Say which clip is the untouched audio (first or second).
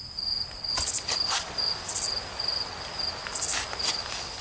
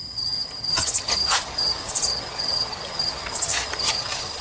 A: first